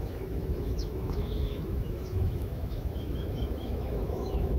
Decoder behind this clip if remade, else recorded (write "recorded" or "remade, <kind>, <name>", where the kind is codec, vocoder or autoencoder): remade, autoencoder, DAC-VAE